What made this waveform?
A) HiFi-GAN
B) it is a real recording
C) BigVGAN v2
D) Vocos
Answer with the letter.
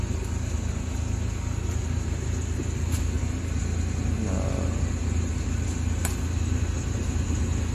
B